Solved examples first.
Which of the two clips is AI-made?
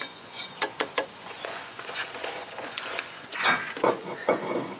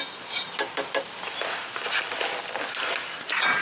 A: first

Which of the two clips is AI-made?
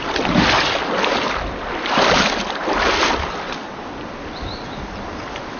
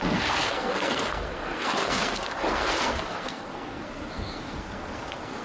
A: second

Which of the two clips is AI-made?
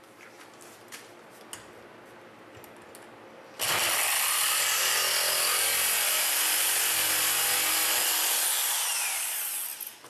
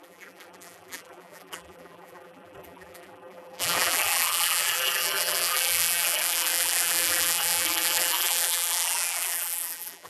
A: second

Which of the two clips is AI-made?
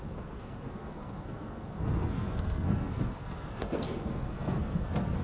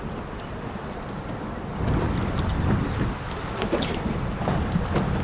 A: first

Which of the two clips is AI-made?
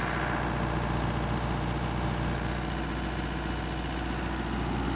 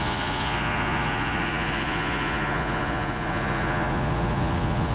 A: second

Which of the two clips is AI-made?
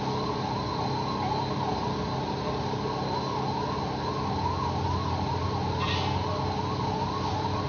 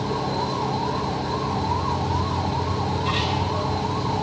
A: second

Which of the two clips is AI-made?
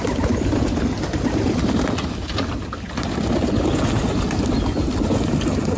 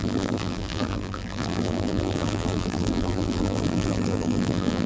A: second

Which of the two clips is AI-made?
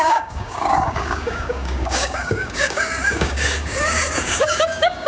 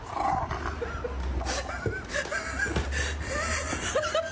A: first